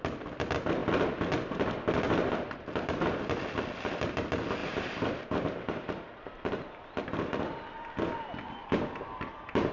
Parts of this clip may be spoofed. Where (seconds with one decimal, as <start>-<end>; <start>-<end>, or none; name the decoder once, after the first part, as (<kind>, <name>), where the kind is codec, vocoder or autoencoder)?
4.6-6.8 (vocoder, BigVGAN v2); 8.6-9.7